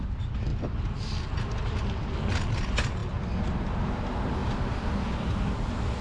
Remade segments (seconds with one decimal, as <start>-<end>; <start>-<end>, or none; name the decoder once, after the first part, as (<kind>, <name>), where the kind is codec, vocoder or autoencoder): none